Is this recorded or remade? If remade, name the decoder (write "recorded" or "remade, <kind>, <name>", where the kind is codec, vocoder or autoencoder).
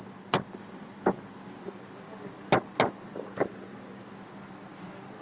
recorded